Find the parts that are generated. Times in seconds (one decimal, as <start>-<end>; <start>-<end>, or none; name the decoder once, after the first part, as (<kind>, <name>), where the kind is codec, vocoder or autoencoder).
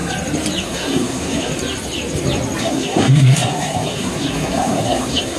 0.6-1.5 (codec, SNAC); 2.6-5.4